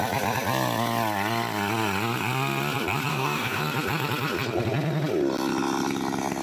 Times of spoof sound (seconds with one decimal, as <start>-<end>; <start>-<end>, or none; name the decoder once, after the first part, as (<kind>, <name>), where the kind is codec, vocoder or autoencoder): 3.1-3.6 (codec, DAC)